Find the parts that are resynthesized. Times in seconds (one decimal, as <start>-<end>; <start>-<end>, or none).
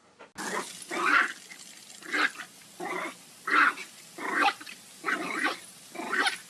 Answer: none